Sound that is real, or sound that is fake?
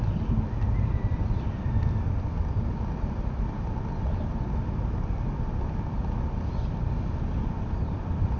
real